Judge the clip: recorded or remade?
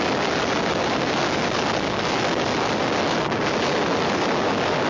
recorded